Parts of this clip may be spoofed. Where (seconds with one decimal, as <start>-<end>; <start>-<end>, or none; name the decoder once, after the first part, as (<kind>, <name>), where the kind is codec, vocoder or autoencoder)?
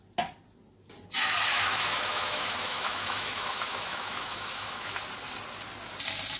1.5-5.0 (autoencoder, DAC-VAE)